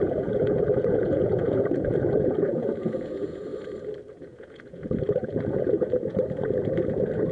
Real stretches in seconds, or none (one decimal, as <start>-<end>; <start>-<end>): 3.5-4.1